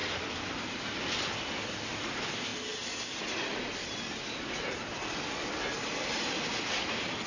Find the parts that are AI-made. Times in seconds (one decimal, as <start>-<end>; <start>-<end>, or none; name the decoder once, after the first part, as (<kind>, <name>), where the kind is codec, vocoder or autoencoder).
none